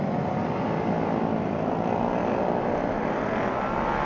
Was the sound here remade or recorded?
recorded